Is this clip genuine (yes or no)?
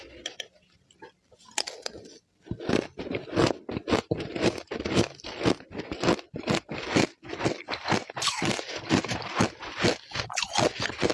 no